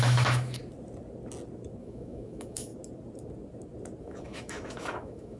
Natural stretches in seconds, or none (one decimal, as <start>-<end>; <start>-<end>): 0.6-1.8; 2.7-4.0